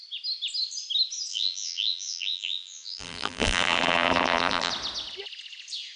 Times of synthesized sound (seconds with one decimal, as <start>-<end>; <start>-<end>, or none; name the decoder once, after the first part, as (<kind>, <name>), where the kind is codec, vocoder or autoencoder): 1.3-4.7 (vocoder, BigVGAN v2)